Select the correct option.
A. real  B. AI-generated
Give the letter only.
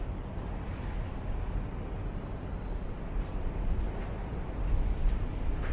A